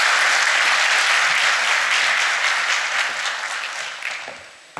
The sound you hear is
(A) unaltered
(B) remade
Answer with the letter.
A